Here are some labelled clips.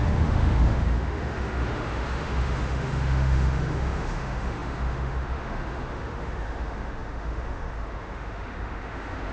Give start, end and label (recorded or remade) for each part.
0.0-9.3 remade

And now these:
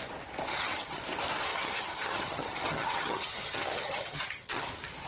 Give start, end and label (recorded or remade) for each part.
0.0-0.5 recorded; 0.5-1.0 remade; 1.0-1.5 recorded; 1.5-4.6 remade; 4.6-5.1 recorded